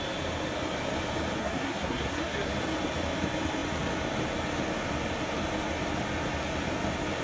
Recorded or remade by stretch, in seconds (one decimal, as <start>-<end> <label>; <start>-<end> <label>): 0.0-1.4 recorded; 1.4-2.5 remade; 2.5-7.2 recorded